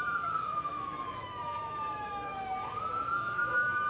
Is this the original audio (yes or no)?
no